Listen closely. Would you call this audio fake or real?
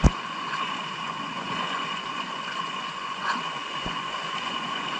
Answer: fake